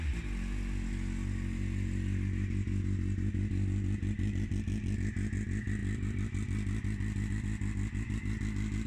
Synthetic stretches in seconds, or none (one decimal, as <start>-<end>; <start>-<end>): none